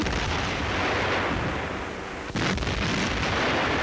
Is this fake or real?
real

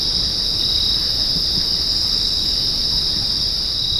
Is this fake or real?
real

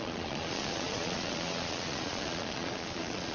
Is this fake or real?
fake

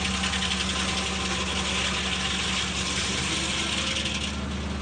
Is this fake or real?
real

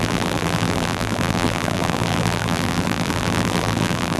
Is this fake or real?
fake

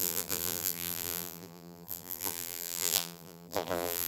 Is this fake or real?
fake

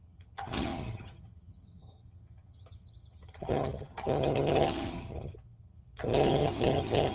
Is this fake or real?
fake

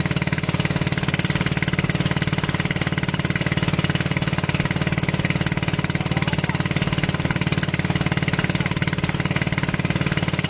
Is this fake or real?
real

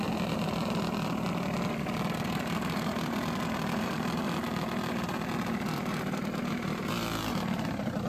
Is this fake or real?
fake